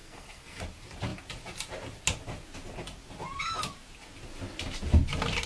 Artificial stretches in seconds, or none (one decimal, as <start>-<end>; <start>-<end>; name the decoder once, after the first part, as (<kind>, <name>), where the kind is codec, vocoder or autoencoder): 0.0-0.6 (codec, SNAC)